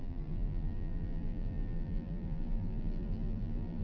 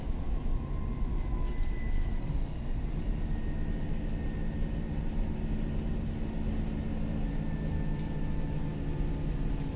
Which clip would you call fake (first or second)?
first